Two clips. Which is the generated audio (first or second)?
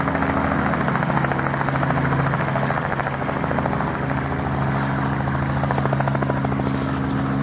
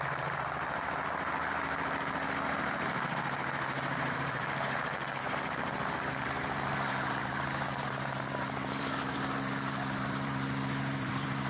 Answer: second